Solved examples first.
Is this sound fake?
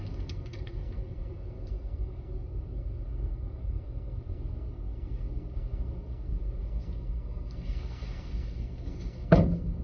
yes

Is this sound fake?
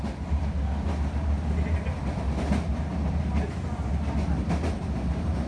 no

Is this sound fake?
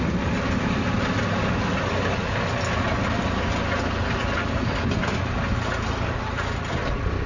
no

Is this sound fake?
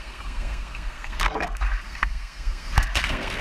yes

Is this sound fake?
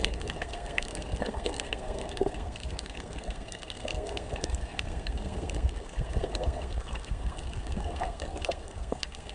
yes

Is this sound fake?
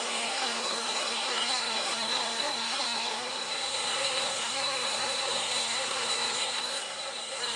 yes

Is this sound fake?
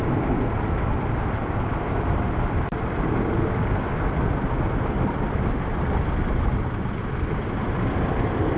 no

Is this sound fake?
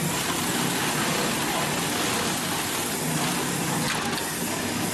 no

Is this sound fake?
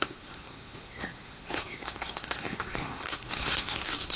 yes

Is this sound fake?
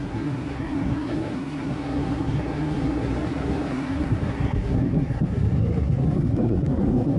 yes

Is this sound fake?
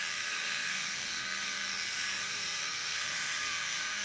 yes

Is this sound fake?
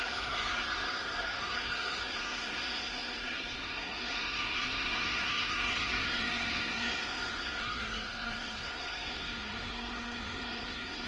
yes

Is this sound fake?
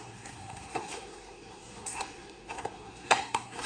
yes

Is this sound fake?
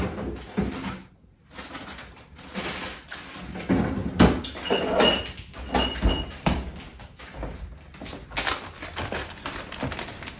no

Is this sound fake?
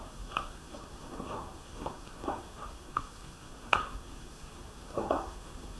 yes